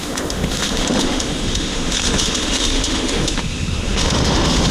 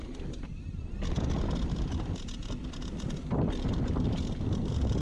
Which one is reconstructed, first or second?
first